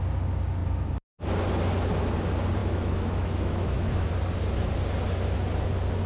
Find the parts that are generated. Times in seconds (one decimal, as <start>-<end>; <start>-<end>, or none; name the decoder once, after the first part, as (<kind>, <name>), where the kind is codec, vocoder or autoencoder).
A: 2.6-4.1 (autoencoder, DAC-VAE)